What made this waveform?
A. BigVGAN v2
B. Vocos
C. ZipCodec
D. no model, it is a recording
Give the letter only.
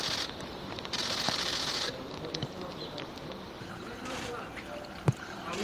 A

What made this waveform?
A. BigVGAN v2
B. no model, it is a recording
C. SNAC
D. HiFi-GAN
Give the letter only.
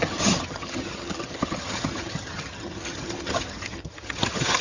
D